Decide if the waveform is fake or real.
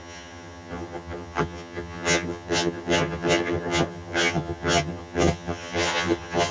fake